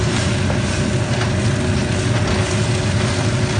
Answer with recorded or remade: recorded